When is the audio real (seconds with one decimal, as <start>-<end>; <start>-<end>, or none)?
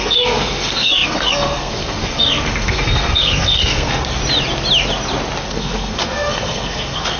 4.2-5.4